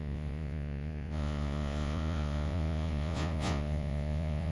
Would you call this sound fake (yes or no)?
yes